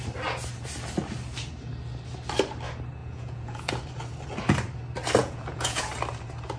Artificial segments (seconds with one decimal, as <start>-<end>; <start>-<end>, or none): 3.0-3.7; 5.2-5.9

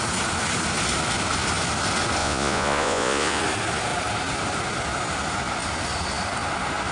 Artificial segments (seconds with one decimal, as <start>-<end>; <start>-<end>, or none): 2.2-3.4